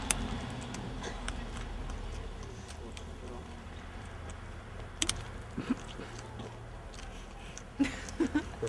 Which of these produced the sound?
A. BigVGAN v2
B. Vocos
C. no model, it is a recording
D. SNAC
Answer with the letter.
C